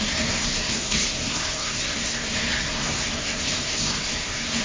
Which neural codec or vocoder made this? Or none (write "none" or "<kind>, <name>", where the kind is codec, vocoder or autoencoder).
codec, SNAC